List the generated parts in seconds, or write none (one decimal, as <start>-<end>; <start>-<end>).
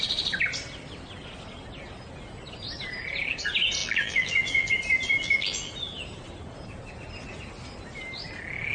3.8-4.7; 5.2-5.7